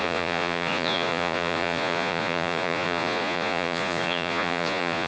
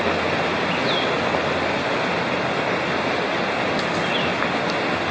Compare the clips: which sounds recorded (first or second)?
second